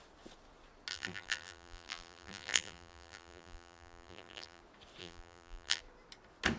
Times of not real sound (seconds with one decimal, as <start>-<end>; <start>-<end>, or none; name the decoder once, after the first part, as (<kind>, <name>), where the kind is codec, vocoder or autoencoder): 0.9-4.6 (vocoder, BigVGAN v2); 5.0-5.8